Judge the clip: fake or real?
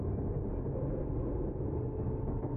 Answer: real